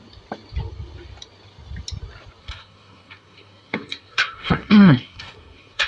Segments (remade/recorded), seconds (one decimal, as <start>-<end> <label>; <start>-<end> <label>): 0.0-2.4 recorded; 2.4-5.9 remade